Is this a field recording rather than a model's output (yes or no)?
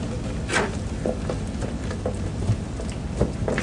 yes